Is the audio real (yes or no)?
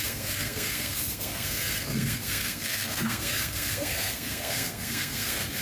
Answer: no